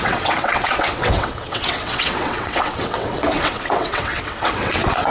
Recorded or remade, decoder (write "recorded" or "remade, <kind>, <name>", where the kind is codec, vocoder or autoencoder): remade, vocoder, WaveNeXt